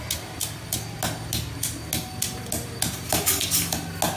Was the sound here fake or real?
real